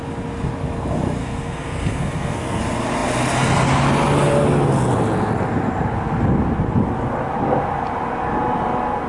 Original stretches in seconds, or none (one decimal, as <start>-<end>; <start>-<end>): 0.0-1.2; 2.6-9.1